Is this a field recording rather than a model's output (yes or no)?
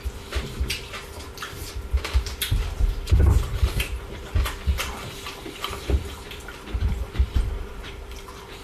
no